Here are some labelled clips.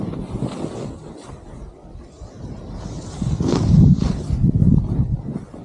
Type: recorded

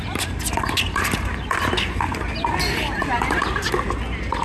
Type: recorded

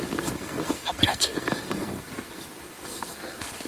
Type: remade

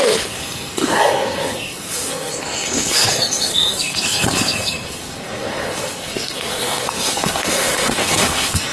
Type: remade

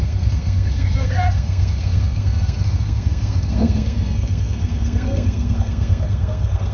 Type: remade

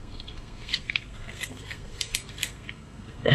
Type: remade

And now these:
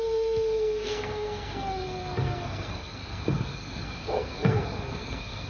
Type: remade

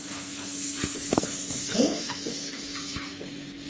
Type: remade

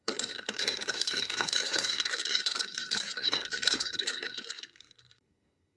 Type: remade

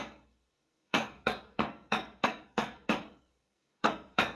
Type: remade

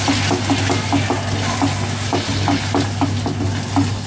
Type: recorded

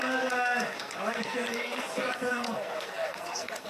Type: remade